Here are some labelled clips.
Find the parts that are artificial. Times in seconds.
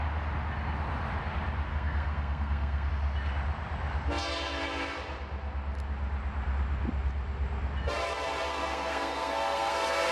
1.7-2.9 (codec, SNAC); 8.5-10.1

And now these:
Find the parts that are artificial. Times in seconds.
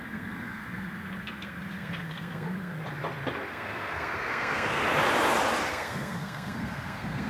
0.0-2.8 (codec, SNAC); 3.5-4.8; 5.7-7.3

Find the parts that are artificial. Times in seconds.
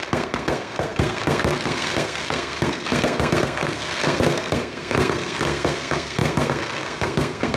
0.0-7.6 (codec, SNAC)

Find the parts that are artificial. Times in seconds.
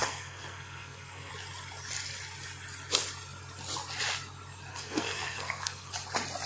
0.0-1.3 (codec, SNAC); 4.7-5.9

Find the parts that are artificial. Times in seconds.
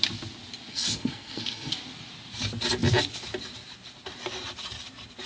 0.7-1.7 (codec, SNAC)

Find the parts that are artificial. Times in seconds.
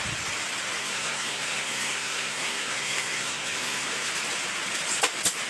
0.8-4.1 (codec, SNAC)